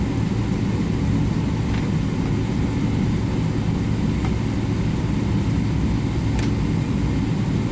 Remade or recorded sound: recorded